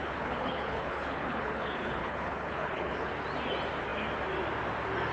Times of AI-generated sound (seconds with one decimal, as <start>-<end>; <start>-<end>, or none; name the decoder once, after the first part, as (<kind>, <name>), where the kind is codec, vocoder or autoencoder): 0.0-3.1 (codec, HILCodec)